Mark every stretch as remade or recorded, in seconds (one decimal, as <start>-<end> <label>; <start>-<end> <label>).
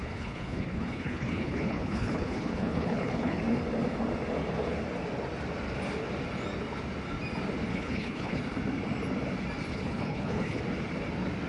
0.0-3.4 remade; 3.4-7.7 recorded; 7.7-8.4 remade; 8.4-9.7 recorded; 9.7-10.6 remade; 10.6-11.5 recorded